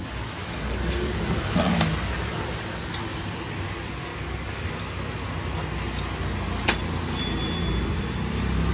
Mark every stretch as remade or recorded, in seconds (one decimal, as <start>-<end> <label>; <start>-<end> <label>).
0.0-0.4 recorded; 0.4-1.6 remade; 1.6-4.1 recorded; 4.1-4.7 remade; 4.7-8.7 recorded